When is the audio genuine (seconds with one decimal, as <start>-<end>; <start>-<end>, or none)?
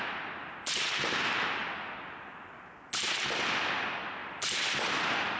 0.0-4.2